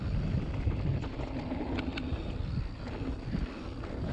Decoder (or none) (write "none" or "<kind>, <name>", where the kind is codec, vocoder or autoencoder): none